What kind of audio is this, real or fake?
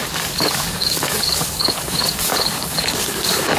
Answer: fake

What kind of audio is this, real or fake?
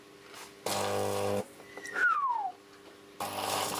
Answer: real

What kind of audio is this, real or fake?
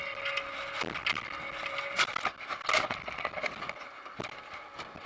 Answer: real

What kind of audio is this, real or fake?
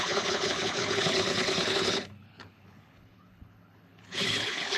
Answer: fake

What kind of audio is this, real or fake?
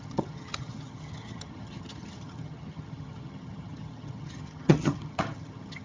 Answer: fake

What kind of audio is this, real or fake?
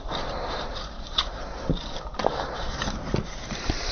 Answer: fake